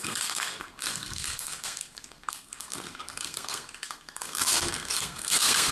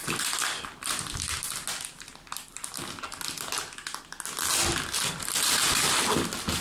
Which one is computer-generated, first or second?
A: first